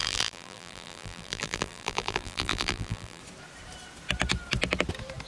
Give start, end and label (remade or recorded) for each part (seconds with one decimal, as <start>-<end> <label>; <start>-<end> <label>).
0.0-3.2 remade; 3.2-5.3 recorded